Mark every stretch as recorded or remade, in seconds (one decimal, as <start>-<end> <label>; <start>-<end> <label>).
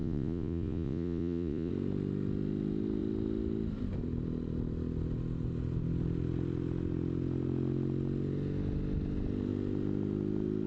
0.0-1.7 remade; 1.7-10.7 recorded